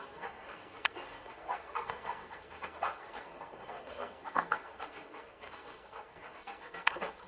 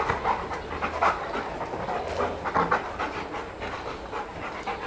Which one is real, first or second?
second